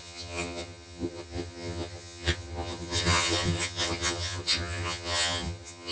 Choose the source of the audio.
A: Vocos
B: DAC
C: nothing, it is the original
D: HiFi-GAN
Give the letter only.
D